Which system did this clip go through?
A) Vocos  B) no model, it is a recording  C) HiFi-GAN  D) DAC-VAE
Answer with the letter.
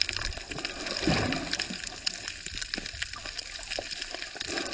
B